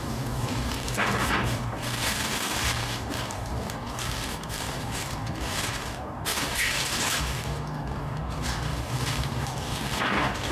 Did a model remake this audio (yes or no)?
yes